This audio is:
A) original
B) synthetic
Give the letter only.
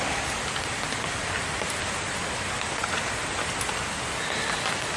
A